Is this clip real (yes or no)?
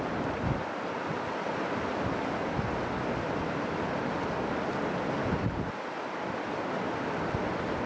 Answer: no